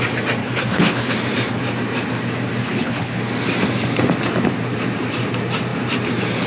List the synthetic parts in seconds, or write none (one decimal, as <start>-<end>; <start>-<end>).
0.4-1.1; 2.6-3.2